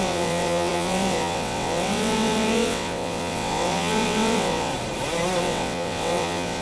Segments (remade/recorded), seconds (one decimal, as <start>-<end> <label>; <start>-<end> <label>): 0.0-4.7 remade; 4.7-5.4 recorded; 5.4-6.6 remade